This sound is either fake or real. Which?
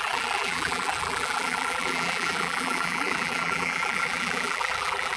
fake